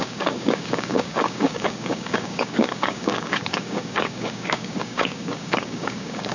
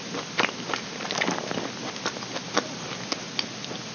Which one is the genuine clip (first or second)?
second